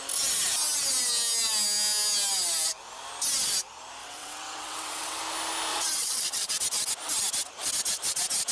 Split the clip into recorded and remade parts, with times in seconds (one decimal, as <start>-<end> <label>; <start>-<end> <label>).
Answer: 0.0-4.0 recorded; 4.0-5.2 remade; 5.2-5.7 recorded; 5.7-6.5 remade; 6.5-8.5 recorded